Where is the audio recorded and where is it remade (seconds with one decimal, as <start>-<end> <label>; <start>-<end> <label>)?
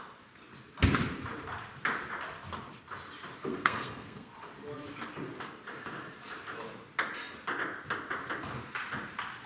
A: 0.0-3.5 recorded; 3.5-4.3 remade; 4.3-9.5 recorded